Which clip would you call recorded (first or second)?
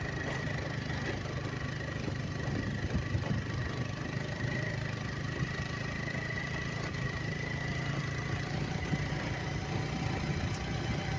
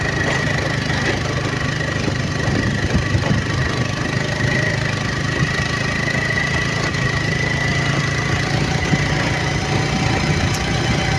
second